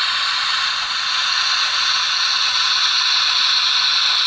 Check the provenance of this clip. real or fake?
fake